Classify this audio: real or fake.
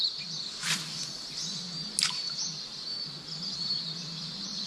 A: real